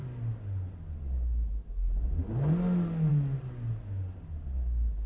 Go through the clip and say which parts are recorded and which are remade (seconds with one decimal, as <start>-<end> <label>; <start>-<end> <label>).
0.0-5.1 recorded